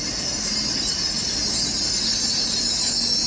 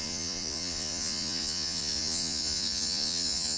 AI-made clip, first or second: second